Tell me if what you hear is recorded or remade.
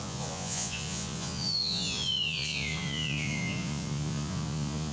remade